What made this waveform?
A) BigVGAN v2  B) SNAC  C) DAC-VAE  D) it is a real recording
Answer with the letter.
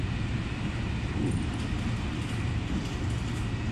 D